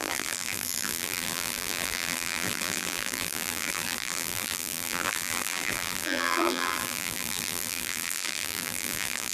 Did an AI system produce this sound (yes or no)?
yes